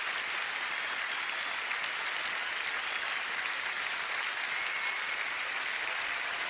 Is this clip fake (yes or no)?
no